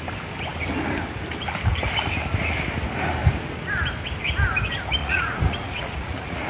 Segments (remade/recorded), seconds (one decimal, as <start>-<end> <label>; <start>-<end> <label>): 0.0-5.0 recorded; 5.0-6.5 remade